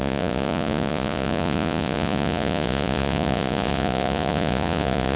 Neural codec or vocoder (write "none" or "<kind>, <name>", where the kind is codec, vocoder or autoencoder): vocoder, Vocos